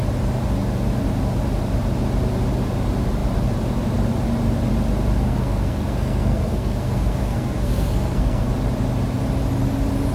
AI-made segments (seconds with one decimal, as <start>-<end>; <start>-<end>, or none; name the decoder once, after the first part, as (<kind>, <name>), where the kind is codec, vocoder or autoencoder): 5.2-8.5 (codec, SNAC)